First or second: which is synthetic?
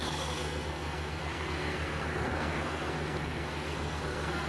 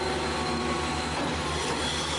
first